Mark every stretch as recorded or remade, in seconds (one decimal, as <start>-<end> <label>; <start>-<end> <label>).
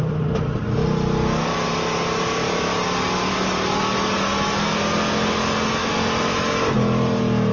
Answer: 0.0-7.5 recorded